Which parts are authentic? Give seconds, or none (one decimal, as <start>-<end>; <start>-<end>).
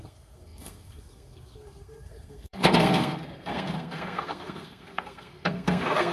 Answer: none